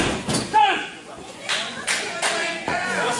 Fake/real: fake